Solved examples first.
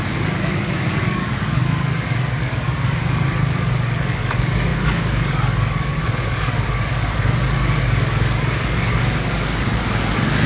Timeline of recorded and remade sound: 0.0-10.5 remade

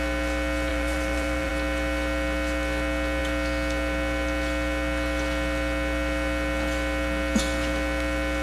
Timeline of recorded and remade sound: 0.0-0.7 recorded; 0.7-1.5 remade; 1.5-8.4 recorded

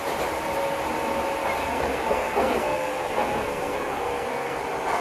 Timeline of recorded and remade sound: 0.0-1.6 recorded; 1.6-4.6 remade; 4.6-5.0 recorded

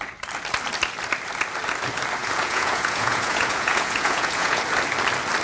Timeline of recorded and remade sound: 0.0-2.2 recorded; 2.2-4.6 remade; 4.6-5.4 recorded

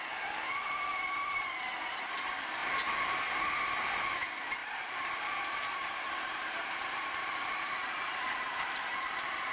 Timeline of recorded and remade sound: 0.0-4.6 recorded; 4.6-8.7 remade; 8.7-9.5 recorded

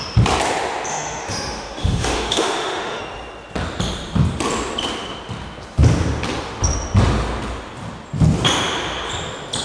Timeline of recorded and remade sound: 0.0-0.9 recorded; 0.9-3.0 remade; 3.0-9.6 recorded